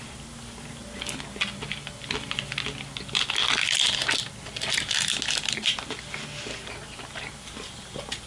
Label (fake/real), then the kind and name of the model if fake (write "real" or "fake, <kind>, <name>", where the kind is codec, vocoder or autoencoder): real